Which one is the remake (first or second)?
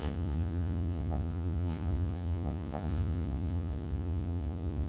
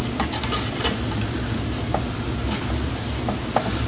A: first